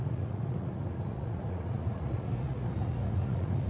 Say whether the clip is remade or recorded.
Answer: remade